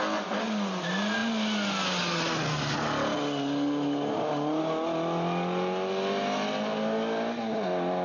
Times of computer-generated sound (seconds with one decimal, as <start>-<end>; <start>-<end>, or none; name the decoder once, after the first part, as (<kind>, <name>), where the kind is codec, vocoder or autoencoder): none